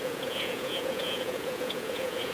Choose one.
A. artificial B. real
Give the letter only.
A